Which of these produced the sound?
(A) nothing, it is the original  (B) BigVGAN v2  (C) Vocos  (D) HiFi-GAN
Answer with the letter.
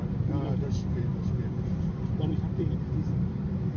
B